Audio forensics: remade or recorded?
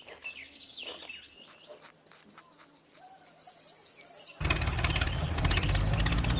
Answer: recorded